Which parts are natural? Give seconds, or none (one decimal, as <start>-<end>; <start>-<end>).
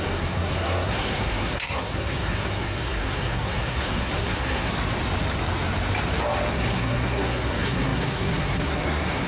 4.7-6.5